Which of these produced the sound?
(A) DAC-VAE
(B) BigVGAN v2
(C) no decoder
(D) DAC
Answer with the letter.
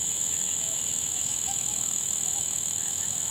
A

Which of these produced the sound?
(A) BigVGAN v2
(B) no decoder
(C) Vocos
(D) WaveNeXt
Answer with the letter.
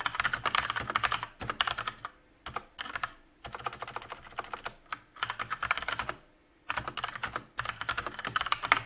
B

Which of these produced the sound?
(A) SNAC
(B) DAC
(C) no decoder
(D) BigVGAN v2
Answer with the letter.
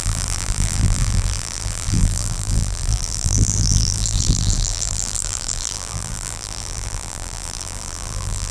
D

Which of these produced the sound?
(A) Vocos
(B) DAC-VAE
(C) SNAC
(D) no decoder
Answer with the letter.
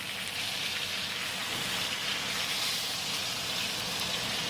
D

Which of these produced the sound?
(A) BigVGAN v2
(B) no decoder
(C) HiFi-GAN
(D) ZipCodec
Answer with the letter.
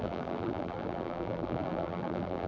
A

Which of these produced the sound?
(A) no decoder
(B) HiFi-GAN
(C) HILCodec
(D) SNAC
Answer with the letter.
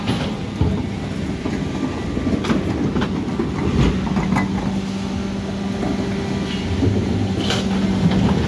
A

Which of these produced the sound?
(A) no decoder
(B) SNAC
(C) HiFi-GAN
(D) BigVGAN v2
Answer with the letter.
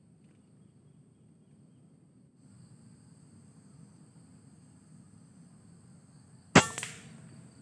A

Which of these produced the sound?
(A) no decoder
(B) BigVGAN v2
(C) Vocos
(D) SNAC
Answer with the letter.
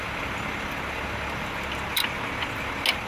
A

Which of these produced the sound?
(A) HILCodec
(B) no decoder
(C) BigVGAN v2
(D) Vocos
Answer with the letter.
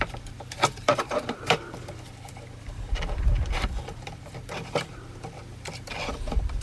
C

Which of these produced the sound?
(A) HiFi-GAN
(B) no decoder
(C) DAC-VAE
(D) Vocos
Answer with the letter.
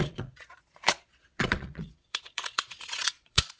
D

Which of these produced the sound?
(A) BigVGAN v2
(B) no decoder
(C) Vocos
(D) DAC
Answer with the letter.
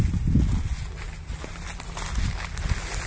B